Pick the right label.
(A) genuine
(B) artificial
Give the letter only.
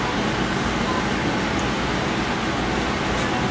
A